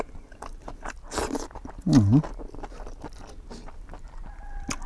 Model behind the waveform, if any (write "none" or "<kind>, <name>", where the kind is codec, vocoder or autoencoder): none